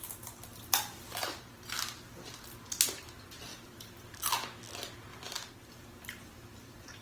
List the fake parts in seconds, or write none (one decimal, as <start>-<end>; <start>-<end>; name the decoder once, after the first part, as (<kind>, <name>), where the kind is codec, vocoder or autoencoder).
0.5-2.3 (vocoder, BigVGAN v2); 3.5-4.2; 5.1-7.0